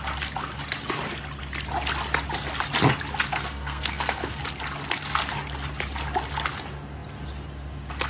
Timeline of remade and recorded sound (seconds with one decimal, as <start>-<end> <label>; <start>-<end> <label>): 0.0-3.3 recorded; 3.3-4.4 remade; 4.4-8.1 recorded